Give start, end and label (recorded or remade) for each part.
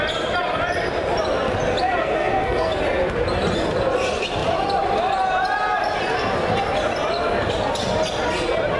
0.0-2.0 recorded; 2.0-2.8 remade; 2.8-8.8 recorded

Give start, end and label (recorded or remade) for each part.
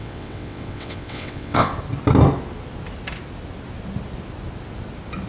0.0-1.7 remade; 1.7-5.3 recorded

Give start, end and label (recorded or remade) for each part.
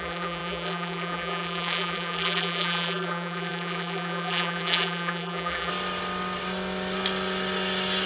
0.0-5.7 remade; 5.7-8.1 recorded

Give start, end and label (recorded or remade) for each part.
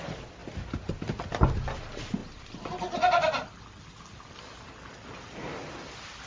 0.0-6.3 recorded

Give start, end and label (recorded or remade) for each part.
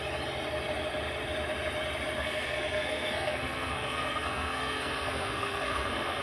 0.0-2.2 recorded; 2.2-6.2 remade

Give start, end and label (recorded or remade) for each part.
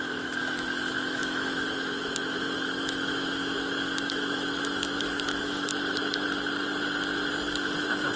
0.0-5.7 remade; 5.7-7.3 recorded; 7.3-8.2 remade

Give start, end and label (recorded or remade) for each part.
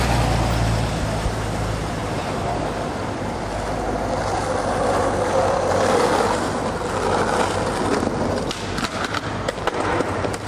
0.0-2.0 recorded; 2.0-2.6 remade; 2.6-10.5 recorded